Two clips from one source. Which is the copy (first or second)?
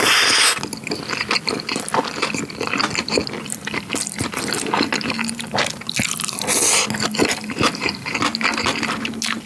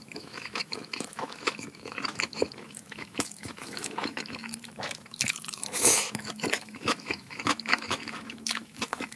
second